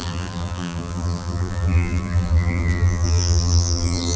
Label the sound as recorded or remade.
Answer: remade